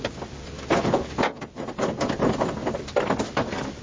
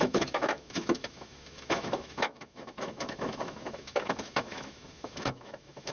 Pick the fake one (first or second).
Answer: second